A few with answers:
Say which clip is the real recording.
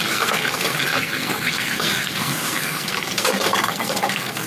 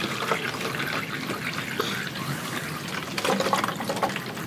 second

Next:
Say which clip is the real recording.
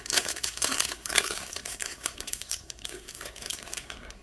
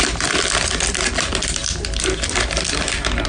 second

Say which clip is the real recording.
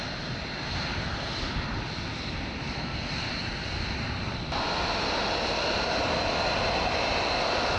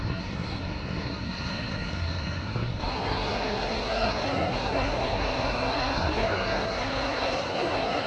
first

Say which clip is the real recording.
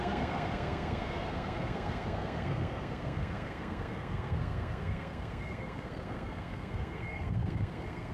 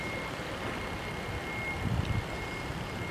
second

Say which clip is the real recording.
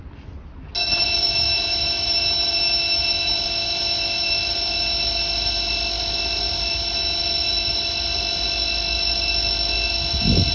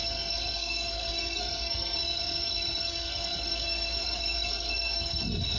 first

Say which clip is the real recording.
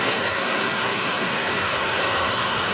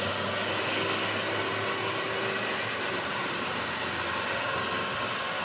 second